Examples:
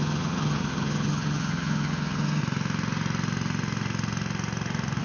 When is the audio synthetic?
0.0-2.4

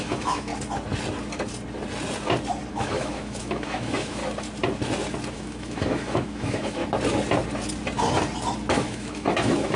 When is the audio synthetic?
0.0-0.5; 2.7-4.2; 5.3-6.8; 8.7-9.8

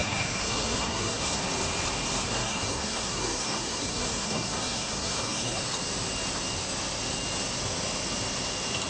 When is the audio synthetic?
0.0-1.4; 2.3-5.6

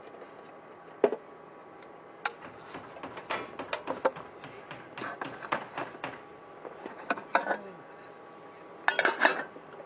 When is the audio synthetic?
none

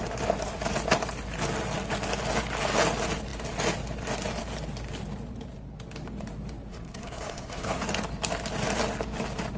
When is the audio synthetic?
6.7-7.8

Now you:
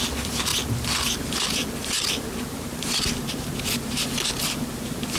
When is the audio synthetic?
none

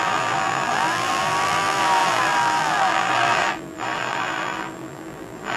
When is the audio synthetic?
0.0-5.6

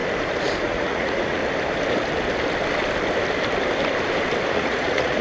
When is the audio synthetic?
0.6-1.4; 4.5-5.2